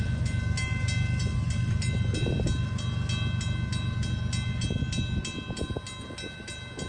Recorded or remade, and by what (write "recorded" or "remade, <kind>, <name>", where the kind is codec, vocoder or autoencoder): recorded